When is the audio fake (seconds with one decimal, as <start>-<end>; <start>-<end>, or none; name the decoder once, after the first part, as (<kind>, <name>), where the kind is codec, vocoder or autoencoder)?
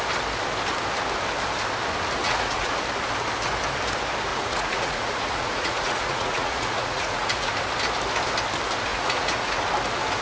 2.2-2.8 (vocoder, Vocos); 4.3-7.5; 8.9-9.7